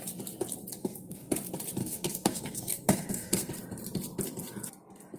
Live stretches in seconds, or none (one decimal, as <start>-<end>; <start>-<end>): 0.0-0.8; 1.3-1.8; 3.5-5.2